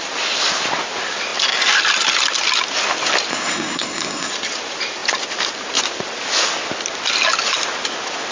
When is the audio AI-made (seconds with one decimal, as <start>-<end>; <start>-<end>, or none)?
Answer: 3.3-4.3